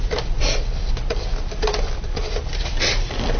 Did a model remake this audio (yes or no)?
no